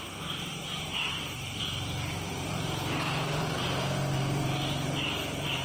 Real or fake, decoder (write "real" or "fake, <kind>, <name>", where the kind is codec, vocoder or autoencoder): fake, vocoder, BigVGAN v2